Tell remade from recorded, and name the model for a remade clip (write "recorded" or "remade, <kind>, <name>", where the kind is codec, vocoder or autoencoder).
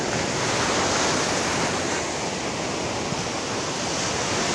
recorded